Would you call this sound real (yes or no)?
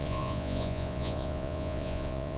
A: no